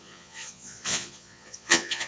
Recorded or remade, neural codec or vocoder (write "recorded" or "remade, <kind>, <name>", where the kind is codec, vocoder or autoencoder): remade, vocoder, Vocos